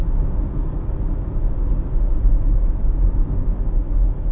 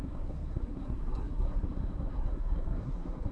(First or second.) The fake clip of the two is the second